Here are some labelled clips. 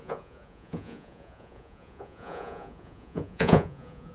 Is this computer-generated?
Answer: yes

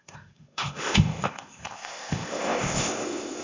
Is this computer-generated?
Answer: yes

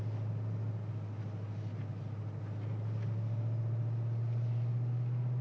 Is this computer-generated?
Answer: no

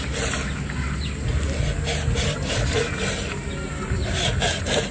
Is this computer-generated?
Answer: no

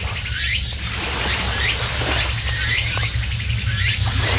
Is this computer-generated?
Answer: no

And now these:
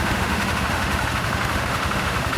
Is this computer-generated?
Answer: yes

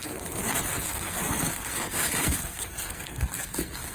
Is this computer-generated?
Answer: yes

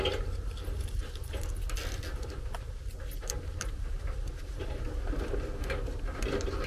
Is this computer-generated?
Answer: no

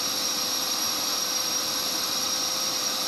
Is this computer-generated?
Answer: yes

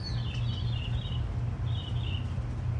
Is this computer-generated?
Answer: no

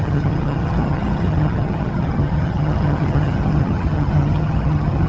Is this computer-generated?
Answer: yes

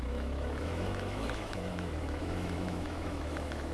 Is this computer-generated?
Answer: yes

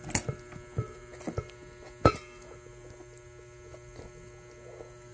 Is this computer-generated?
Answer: no